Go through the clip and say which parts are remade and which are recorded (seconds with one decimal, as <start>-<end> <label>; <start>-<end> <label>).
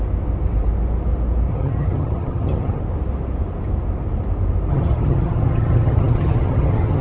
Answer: 0.0-1.5 recorded; 1.5-2.8 remade; 2.8-4.7 recorded; 4.7-7.0 remade